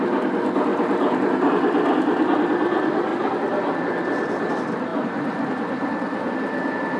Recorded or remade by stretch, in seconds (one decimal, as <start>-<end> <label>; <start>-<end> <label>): 0.0-0.7 recorded; 0.7-1.3 remade; 1.3-3.1 recorded; 3.1-4.5 remade; 4.5-4.9 recorded; 4.9-6.3 remade; 6.3-7.0 recorded